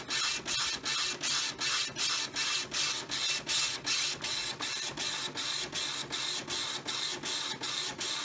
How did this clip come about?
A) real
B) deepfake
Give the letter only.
A